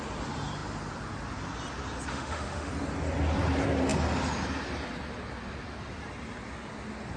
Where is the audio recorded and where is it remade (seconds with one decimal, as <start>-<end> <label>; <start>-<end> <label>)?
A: 0.0-2.1 recorded; 2.1-2.7 remade; 2.7-7.2 recorded